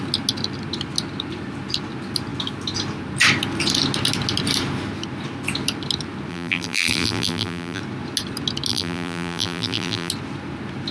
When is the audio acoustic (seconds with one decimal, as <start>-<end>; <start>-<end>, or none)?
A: 0.0-6.3; 7.8-8.7; 10.1-10.9